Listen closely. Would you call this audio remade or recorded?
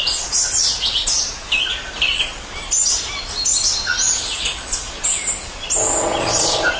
recorded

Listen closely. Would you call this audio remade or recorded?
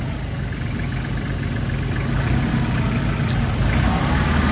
recorded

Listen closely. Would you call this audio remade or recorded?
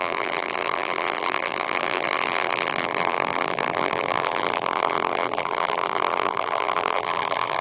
remade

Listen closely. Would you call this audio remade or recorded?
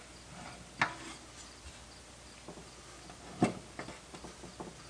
recorded